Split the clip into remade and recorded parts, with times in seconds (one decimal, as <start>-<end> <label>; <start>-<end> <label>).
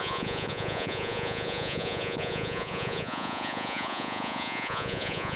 0.0-5.4 remade